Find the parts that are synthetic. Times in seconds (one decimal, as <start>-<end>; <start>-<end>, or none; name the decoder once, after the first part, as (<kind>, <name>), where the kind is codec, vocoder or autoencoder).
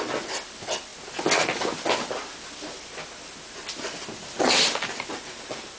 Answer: none